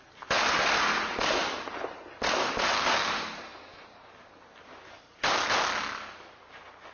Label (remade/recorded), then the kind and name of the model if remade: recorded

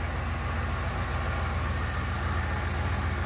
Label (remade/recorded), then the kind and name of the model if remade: recorded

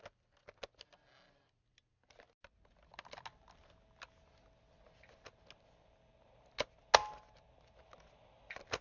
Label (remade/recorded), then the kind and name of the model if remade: recorded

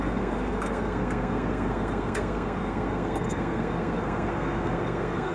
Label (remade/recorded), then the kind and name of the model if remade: remade, codec, SNAC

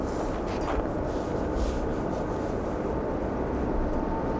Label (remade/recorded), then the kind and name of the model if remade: recorded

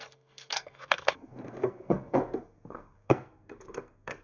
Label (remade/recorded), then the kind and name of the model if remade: remade, codec, SNAC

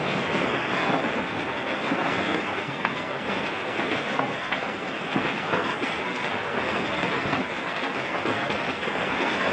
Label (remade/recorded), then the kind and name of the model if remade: remade, codec, SNAC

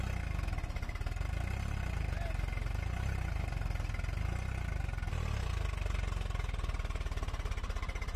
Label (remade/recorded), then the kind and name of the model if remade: recorded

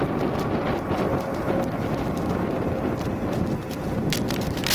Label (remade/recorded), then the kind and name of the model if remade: recorded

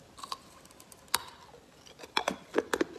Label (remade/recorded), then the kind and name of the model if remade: recorded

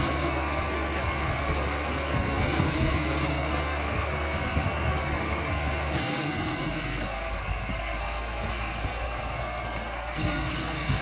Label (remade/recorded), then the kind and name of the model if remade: remade, codec, SNAC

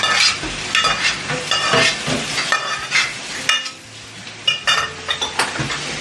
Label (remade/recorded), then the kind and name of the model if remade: recorded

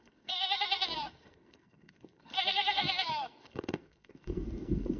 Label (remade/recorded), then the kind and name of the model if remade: remade, codec, SNAC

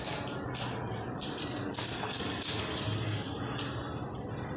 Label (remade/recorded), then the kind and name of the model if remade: recorded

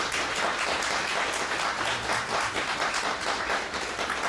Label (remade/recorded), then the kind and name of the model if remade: recorded